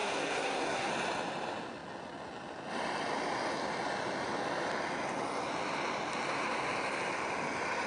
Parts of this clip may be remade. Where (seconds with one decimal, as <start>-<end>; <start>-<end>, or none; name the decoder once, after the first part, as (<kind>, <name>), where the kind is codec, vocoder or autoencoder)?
0.0-0.9 (codec, SNAC)